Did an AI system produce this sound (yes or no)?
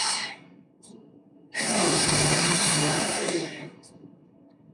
yes